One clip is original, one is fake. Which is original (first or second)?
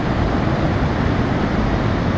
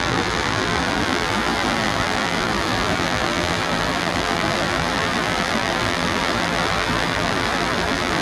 first